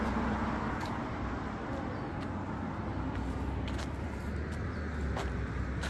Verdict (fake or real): real